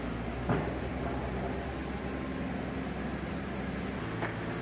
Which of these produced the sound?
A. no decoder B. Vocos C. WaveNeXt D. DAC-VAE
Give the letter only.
A